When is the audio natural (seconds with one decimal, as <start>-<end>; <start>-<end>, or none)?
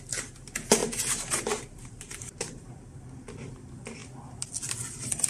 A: 0.0-0.8; 2.8-5.3